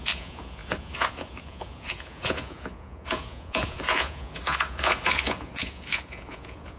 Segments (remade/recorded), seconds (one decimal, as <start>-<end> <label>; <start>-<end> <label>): 0.0-6.8 remade

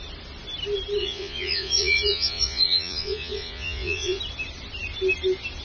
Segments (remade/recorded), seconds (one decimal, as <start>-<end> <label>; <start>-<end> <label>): 0.0-1.0 recorded; 1.0-4.2 remade; 4.2-5.6 recorded

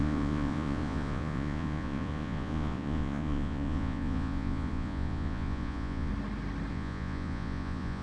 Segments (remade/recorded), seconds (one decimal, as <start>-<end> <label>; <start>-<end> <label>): 0.0-6.1 remade; 6.1-6.7 recorded; 6.7-8.0 remade

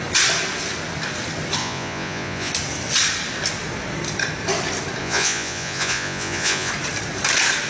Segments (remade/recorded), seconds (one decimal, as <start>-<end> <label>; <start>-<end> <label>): 0.0-1.6 recorded; 1.6-2.5 remade; 2.5-5.0 recorded; 5.0-6.7 remade; 6.7-7.7 recorded

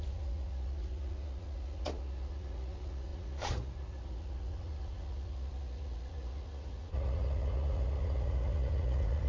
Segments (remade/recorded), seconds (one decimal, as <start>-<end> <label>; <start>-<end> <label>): 0.0-9.3 remade

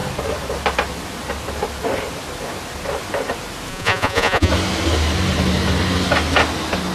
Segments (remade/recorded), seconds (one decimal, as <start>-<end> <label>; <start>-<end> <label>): 0.0-3.7 recorded; 3.7-4.5 remade; 4.5-6.9 recorded

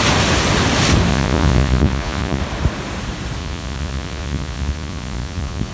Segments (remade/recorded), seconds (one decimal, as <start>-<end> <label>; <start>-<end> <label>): 0.0-1.1 recorded; 1.1-2.4 remade; 2.4-3.4 recorded; 3.4-5.7 remade